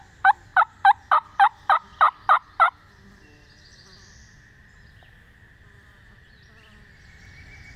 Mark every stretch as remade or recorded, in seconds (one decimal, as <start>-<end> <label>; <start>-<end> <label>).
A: 0.0-7.8 recorded